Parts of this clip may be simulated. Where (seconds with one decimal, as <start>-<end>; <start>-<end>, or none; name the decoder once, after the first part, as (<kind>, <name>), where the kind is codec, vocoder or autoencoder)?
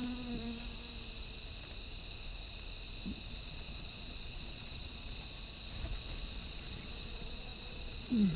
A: 3.3-5.1 (vocoder, Vocos); 6.5-8.4